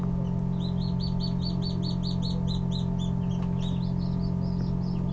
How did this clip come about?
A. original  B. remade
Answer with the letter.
A